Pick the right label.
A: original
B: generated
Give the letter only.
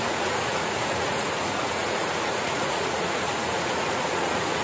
B